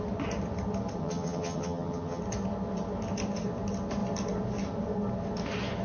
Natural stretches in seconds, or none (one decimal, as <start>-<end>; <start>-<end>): 0.0-1.0; 2.2-5.8